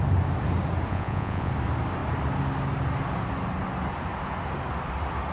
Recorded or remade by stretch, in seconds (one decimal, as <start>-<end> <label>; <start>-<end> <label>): 0.0-0.9 recorded; 0.9-1.5 remade; 1.5-5.3 recorded